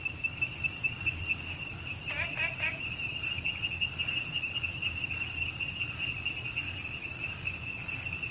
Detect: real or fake real